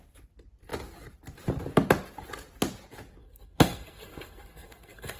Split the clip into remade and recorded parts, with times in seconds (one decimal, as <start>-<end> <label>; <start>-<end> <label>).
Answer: 0.0-3.2 recorded; 3.2-5.2 remade